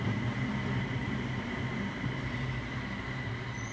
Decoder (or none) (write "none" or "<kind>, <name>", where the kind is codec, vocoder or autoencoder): none